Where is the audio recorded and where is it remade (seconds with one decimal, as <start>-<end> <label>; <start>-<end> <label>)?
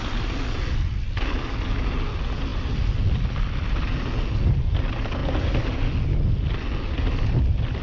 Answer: 0.0-7.8 recorded